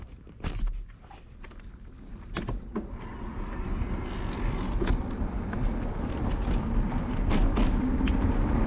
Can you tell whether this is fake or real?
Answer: real